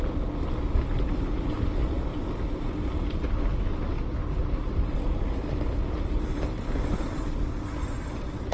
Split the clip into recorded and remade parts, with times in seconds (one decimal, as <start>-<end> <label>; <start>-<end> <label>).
0.0-8.5 recorded